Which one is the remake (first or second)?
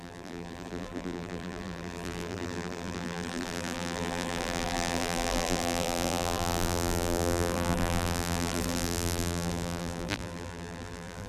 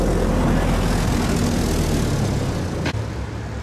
first